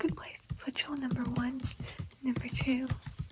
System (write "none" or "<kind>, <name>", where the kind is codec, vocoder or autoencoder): vocoder, BigVGAN v2